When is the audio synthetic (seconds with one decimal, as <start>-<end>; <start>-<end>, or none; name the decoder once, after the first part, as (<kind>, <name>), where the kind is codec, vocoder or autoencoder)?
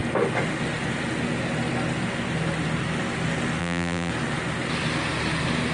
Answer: 3.6-4.1 (vocoder, BigVGAN v2)